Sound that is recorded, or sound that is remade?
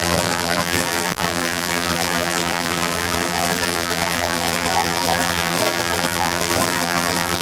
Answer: remade